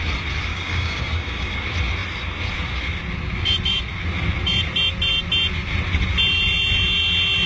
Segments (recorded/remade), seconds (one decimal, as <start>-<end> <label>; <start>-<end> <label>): 0.0-0.5 recorded; 0.5-1.6 remade; 1.6-7.5 recorded